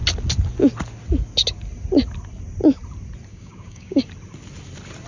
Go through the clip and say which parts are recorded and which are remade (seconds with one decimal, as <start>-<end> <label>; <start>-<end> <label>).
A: 0.0-3.3 recorded; 3.3-4.0 remade; 4.0-5.1 recorded